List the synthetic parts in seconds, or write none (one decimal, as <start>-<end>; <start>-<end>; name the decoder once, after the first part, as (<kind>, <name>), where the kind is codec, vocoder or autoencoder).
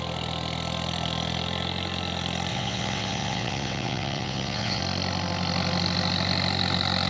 2.5-4.8 (vocoder, WaveNeXt)